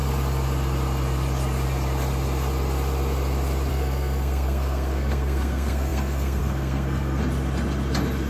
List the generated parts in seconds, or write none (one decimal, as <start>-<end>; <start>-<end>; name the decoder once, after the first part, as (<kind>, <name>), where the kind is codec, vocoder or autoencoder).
3.7-7.2 (codec, SNAC)